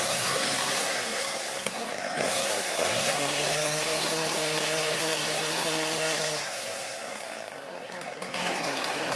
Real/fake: fake